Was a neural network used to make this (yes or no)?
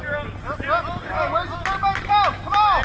no